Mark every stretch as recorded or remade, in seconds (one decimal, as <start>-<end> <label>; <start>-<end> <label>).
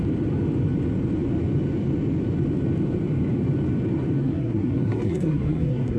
0.0-4.2 recorded; 4.2-6.0 remade